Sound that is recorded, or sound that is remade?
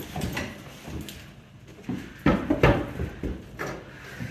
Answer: recorded